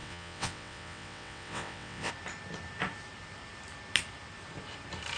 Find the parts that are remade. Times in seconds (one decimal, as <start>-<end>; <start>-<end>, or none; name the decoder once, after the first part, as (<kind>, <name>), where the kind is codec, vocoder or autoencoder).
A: 0.0-2.1 (vocoder, WaveNeXt)